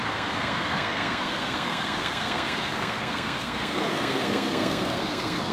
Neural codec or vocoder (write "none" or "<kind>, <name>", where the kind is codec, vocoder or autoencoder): codec, SNAC